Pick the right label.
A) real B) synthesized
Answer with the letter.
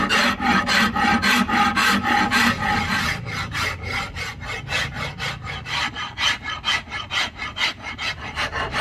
B